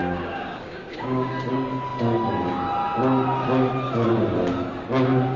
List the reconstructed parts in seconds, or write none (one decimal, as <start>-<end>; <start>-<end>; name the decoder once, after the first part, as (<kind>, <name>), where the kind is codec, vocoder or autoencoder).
0.0-1.3 (codec, DAC)